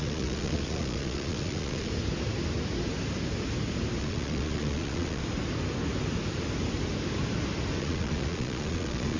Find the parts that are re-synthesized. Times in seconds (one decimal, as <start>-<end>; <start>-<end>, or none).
0.0-1.9; 4.0-5.2; 7.8-9.2